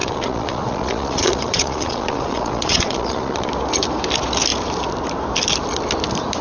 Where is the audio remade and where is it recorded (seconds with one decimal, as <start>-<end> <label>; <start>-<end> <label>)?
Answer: 0.0-3.5 remade; 3.5-6.4 recorded